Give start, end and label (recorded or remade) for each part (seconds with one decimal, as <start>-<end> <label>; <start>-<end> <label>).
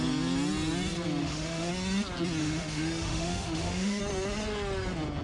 0.0-1.2 recorded; 1.2-1.7 remade; 1.7-2.4 recorded; 2.4-4.0 remade; 4.0-5.2 recorded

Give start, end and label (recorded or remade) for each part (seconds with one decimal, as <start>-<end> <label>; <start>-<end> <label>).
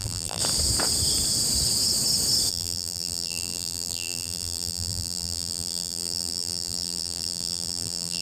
0.0-0.4 remade; 0.4-2.5 recorded; 2.5-8.2 remade